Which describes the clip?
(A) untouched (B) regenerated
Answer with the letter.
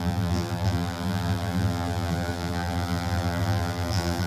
B